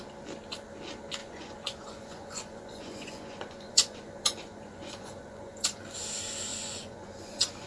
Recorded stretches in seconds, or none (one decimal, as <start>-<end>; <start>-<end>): 0.0-1.2; 5.8-6.5